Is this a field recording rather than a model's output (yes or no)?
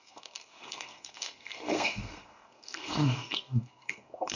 no